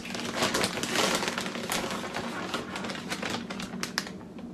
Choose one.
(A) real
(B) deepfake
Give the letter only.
A